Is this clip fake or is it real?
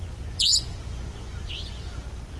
fake